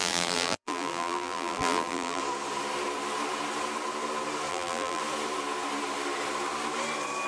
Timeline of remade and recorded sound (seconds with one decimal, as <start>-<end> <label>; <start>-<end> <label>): 0.0-2.2 remade; 2.2-4.5 recorded; 4.5-5.0 remade; 5.0-7.3 recorded